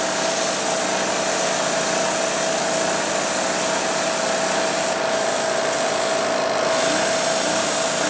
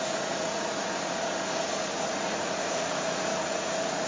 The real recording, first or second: first